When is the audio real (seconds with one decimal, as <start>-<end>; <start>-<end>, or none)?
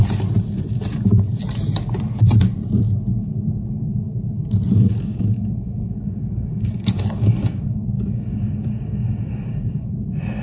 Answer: 0.0-3.1; 4.2-4.7; 9.9-10.4